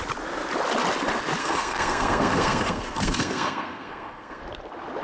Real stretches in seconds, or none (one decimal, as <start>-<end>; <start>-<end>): 0.0-1.4; 4.4-5.0